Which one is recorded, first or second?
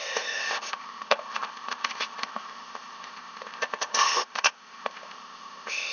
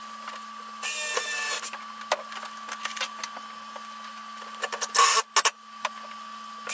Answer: second